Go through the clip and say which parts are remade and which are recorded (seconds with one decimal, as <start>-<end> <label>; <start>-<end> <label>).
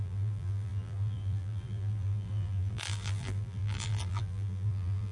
0.0-5.1 remade